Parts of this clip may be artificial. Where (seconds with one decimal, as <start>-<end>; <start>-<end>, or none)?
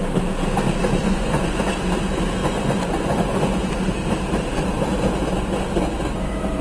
1.0-1.7; 2.4-3.7